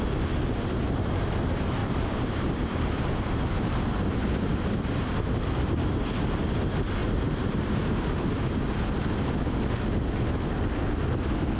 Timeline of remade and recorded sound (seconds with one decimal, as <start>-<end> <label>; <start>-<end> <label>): 0.0-1.8 recorded; 1.8-6.4 remade; 6.4-7.0 recorded; 7.0-8.4 remade; 8.4-11.6 recorded